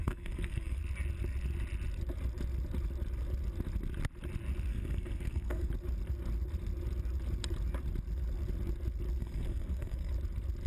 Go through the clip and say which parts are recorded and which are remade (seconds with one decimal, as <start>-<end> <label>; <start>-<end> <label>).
0.0-0.8 remade; 0.8-4.7 recorded; 4.7-5.7 remade; 5.7-9.2 recorded; 9.2-10.1 remade; 10.1-10.7 recorded